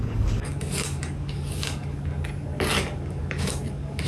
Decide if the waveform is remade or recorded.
remade